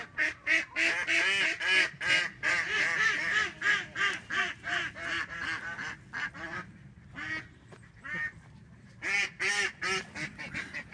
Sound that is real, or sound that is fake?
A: real